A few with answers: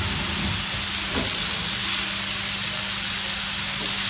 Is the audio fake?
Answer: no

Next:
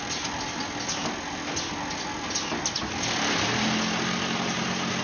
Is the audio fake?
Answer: no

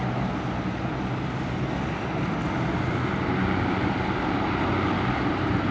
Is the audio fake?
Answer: no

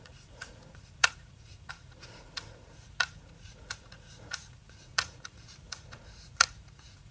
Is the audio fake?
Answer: yes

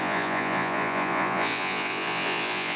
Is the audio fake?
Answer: yes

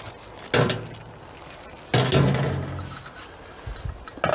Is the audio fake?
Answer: no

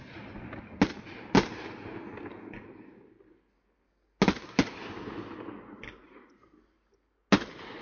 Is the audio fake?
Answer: no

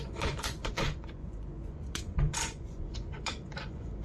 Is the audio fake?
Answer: yes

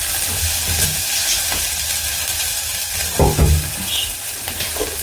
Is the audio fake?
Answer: no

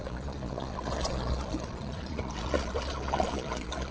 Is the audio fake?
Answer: yes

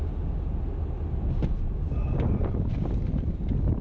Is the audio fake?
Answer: no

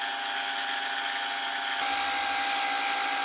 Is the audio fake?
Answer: no